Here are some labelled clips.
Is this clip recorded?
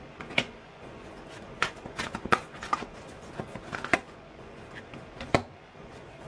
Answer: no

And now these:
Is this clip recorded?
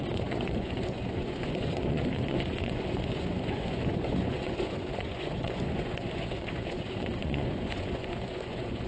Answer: no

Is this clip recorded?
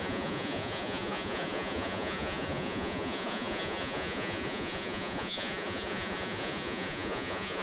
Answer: no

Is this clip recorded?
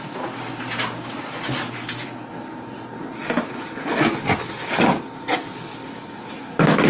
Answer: yes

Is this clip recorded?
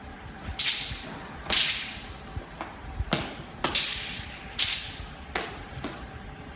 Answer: yes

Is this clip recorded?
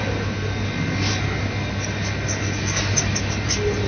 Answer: yes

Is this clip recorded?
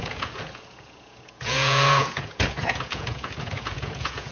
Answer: no